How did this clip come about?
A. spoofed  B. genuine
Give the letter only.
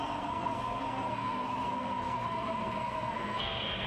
A